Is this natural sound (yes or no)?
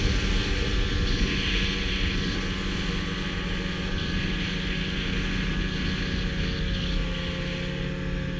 yes